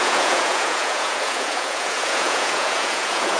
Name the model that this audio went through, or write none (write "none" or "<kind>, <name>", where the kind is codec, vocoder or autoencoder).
vocoder, Vocos